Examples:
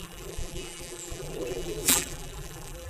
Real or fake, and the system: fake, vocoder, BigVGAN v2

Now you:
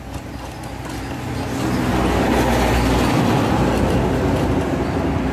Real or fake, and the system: real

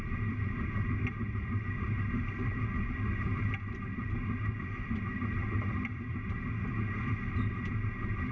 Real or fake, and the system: fake, vocoder, BigVGAN v2